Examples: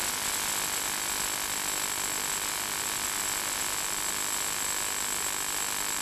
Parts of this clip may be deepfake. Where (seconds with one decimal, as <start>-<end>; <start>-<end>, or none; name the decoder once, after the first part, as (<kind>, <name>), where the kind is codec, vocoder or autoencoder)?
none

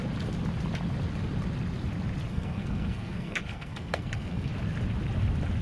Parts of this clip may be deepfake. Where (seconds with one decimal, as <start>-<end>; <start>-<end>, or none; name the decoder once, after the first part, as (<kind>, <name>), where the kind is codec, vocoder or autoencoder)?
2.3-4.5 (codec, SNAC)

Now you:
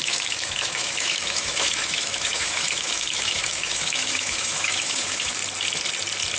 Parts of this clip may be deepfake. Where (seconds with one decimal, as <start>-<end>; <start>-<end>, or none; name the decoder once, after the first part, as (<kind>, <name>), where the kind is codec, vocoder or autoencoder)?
0.0-5.4 (autoencoder, DAC-VAE)

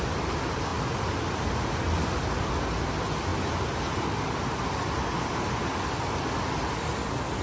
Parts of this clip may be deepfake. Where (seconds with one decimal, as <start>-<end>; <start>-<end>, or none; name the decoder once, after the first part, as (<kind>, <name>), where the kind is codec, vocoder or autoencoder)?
none

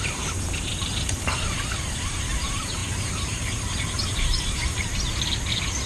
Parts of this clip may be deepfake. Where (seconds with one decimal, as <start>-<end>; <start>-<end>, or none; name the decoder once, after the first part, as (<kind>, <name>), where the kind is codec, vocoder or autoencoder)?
0.0-4.9 (vocoder, BigVGAN v2)